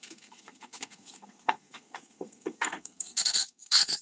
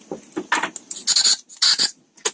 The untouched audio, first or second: second